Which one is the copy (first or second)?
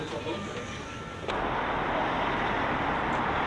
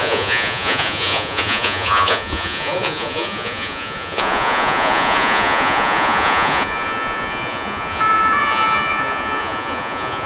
second